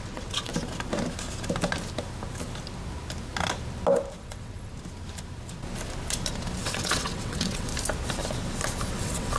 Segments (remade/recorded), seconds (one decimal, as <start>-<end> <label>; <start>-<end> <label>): 0.0-0.5 remade; 0.5-4.2 recorded; 4.2-4.7 remade; 4.7-6.6 recorded; 6.6-7.7 remade; 7.7-8.9 recorded; 8.9-9.4 remade